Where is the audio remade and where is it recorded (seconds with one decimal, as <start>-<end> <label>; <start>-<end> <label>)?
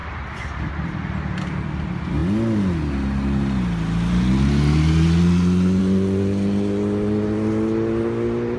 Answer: 0.0-8.6 recorded